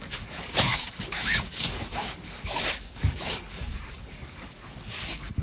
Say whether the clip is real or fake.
fake